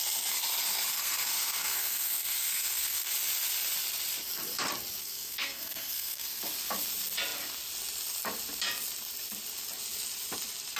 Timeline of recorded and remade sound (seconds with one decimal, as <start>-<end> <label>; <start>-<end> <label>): 0.0-0.9 recorded; 0.9-3.1 remade; 3.1-5.0 recorded; 5.0-6.4 remade; 6.4-10.8 recorded